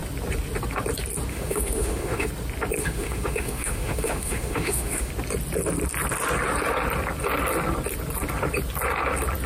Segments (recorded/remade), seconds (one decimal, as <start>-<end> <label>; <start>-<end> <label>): 0.0-1.3 recorded; 1.3-2.3 remade; 2.3-2.8 recorded; 2.8-5.1 remade; 5.1-9.5 recorded